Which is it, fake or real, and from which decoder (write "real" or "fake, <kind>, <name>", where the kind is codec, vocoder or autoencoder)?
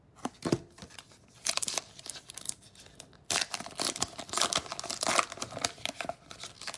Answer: real